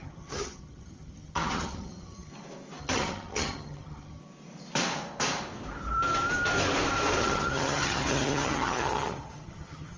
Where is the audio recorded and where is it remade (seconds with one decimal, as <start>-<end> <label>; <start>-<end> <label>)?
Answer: 0.0-2.3 remade; 2.3-2.8 recorded; 2.8-4.2 remade; 4.2-7.2 recorded; 7.2-10.0 remade